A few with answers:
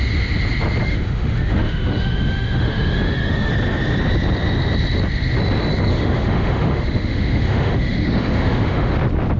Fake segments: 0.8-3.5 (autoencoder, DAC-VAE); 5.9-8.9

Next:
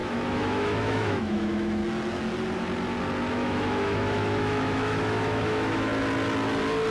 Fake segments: 0.0-1.8 (autoencoder, DAC-VAE); 3.3-5.9

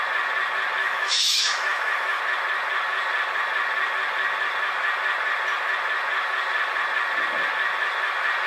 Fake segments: 0.8-2.2 (autoencoder, DAC-VAE)

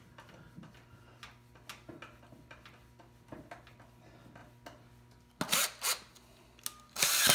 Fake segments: none

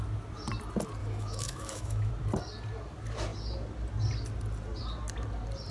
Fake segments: 1.0-2.1 (autoencoder, DAC-VAE)

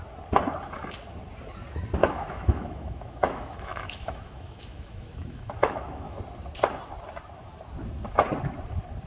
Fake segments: 2.0-6.2 (autoencoder, DAC-VAE)

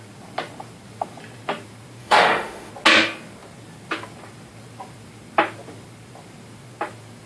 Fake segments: 2.0-2.7 (autoencoder, DAC-VAE)

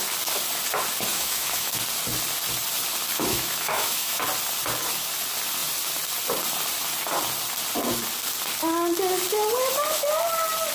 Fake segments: 1.1-1.8 (autoencoder, DAC-VAE); 3.1-4.2